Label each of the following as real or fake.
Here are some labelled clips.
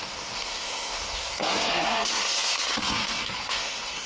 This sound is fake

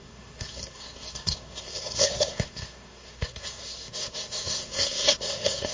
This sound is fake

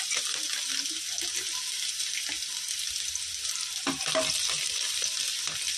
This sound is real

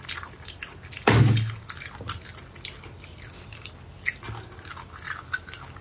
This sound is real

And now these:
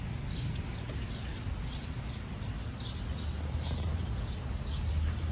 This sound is real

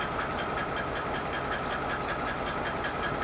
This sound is real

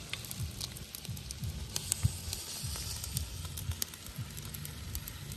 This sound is real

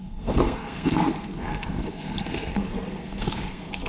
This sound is fake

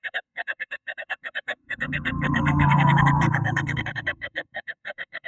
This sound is fake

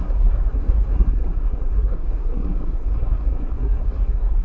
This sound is fake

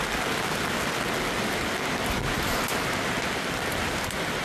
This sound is real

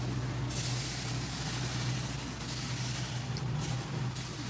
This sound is real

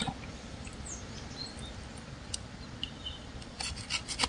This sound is real